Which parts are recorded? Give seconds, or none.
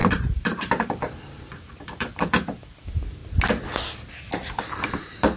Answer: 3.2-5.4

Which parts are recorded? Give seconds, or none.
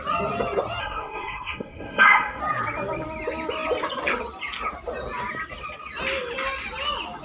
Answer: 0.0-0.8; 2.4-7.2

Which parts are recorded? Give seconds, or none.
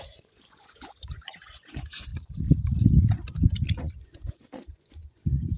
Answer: 2.1-3.8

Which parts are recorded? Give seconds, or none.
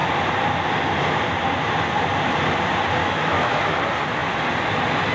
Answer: 0.0-3.0; 3.8-5.1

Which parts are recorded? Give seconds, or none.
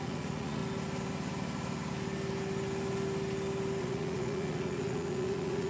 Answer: 0.6-3.8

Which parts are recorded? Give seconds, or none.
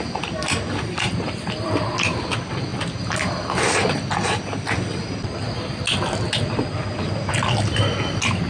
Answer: 0.0-8.5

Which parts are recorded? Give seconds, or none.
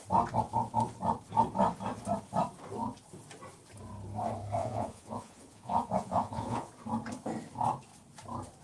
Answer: 0.0-4.6; 6.7-8.6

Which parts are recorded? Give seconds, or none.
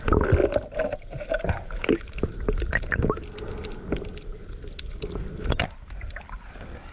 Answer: 0.0-6.9